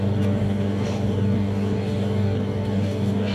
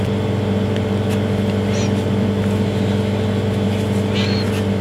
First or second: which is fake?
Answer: first